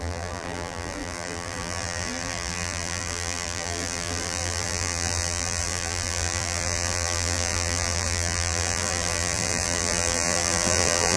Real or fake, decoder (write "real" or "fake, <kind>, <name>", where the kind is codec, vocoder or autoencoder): fake, vocoder, BigVGAN v2